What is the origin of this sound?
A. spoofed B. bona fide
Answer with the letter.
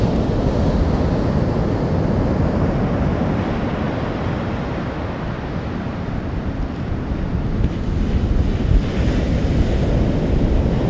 B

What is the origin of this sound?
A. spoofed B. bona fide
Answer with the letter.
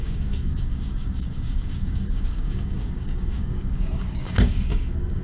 A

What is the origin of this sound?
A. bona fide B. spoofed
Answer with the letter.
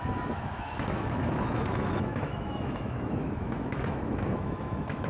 B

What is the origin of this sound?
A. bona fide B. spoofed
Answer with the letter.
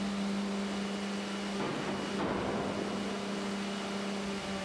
A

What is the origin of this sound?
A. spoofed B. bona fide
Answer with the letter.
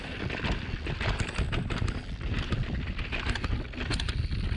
B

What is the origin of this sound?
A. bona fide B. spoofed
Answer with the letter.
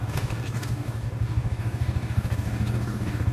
B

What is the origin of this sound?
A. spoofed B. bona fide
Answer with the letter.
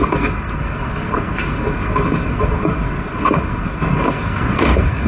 A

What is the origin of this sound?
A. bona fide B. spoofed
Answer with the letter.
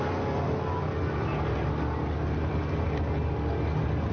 A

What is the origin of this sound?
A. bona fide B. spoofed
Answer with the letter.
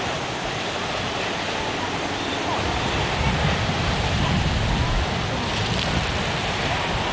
A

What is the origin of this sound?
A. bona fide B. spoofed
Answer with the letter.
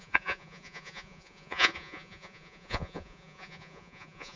B